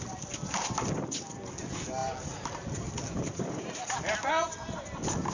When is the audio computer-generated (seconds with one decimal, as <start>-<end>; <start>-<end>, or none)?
2.0-4.3